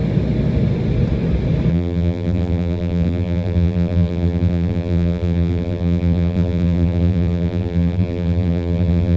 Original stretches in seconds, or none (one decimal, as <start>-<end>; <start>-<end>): 0.0-1.7

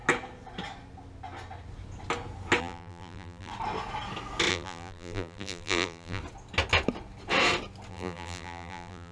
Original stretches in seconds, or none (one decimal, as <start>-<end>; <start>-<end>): 0.0-2.6; 3.5-4.5; 6.2-7.9

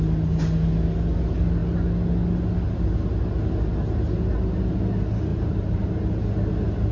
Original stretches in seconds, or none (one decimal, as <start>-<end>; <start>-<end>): 0.0-5.3; 5.9-6.9

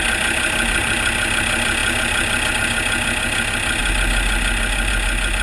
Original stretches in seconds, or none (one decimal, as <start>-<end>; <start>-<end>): 0.0-5.4

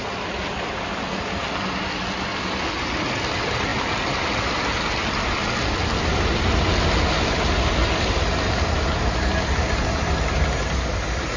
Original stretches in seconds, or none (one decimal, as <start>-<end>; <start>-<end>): 0.0-11.4